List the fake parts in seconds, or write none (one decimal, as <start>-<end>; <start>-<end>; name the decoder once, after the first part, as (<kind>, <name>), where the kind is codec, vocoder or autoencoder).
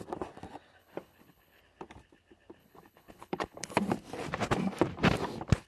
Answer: 0.8-1.6 (codec, HILCodec); 2.6-3.8